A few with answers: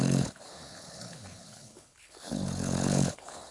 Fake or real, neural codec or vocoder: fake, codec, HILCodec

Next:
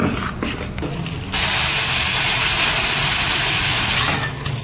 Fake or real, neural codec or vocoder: real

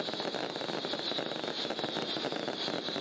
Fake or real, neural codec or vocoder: real